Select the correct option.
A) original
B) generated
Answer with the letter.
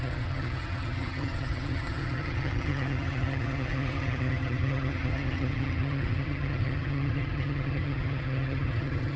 B